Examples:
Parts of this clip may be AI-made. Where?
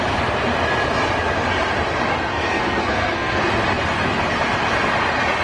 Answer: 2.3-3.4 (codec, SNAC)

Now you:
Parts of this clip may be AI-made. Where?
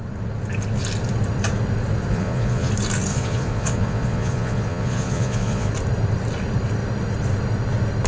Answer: 2.1-2.7 (vocoder, Vocos); 3.1-5.7